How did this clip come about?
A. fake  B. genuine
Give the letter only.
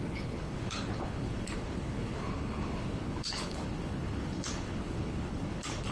A